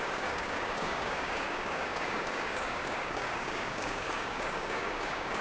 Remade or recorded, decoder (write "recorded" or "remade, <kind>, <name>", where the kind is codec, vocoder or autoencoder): remade, codec, DAC